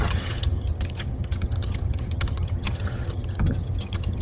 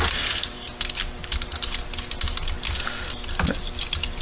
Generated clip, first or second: first